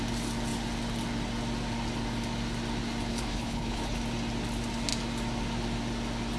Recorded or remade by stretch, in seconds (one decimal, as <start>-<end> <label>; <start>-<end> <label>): 0.0-3.1 recorded; 3.1-4.0 remade; 4.0-6.4 recorded